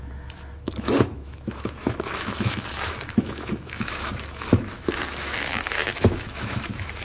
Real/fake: fake